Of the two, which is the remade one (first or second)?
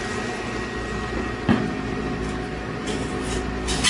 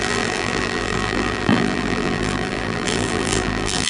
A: second